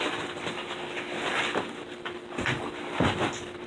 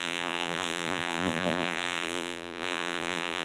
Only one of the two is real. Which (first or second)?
first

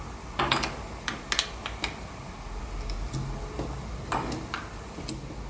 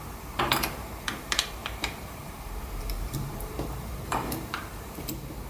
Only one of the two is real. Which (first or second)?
first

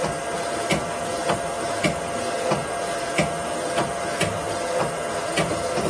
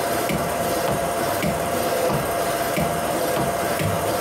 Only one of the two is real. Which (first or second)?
first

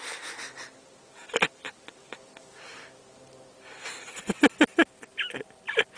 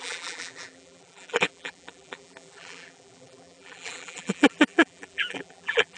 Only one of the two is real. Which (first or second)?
first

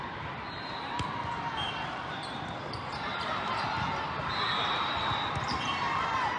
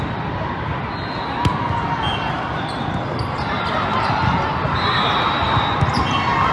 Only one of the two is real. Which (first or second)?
second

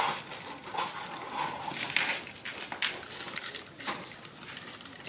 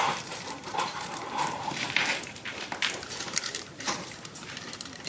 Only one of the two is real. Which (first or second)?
first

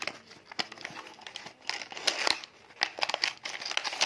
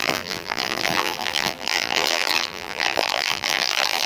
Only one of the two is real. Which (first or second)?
first